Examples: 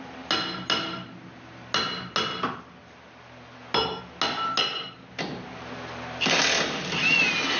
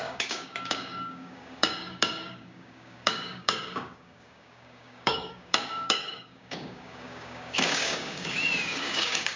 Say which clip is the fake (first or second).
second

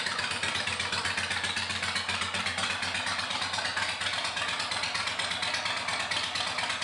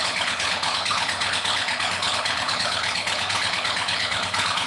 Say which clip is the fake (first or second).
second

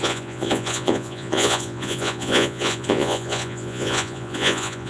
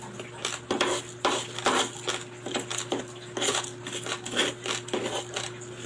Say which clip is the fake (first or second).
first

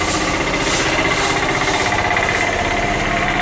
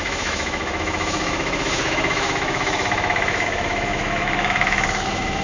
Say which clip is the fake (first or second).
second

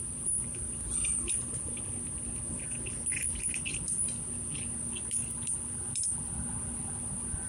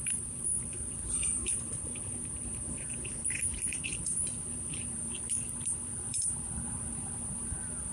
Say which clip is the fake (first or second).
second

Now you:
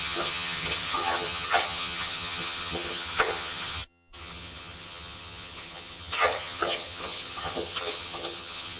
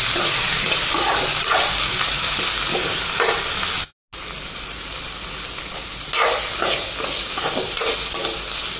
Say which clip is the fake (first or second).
first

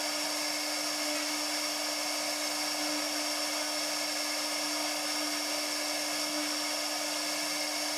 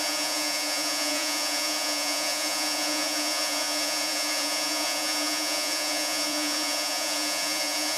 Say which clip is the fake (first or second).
second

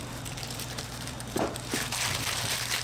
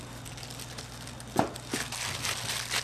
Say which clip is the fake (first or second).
first